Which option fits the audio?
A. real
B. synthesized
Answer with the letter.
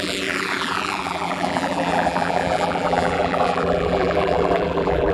B